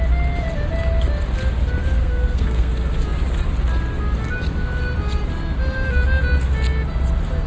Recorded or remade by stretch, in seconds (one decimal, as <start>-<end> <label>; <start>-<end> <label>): 0.0-2.0 recorded; 2.0-2.7 remade; 2.7-7.5 recorded